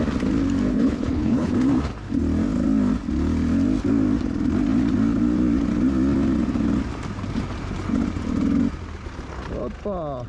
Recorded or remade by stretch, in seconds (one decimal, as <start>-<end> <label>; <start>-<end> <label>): 0.0-0.7 recorded; 0.7-1.5 remade; 1.5-10.3 recorded